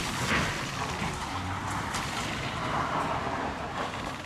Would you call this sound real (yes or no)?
yes